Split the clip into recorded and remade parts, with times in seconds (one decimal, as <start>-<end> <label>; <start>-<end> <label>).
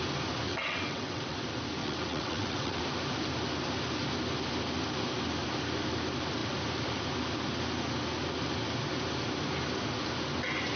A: 0.0-0.5 recorded; 0.5-1.4 remade; 1.4-1.8 recorded; 1.8-2.8 remade; 2.8-10.8 recorded